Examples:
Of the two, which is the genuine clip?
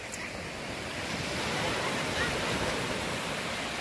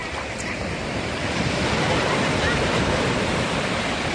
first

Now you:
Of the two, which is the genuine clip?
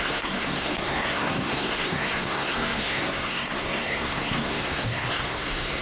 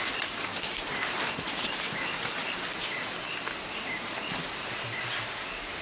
second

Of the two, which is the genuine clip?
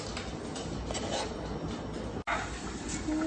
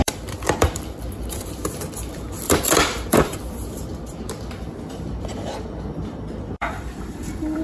first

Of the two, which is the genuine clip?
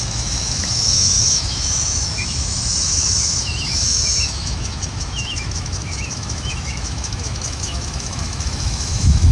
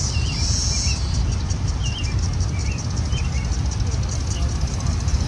second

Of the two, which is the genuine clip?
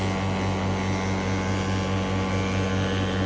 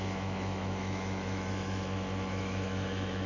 first